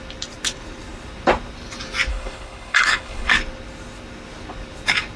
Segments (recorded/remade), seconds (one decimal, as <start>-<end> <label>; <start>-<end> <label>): 0.0-2.1 recorded; 2.1-3.3 remade; 3.3-5.2 recorded